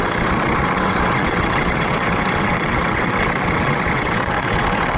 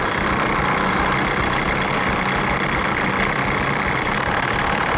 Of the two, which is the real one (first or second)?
second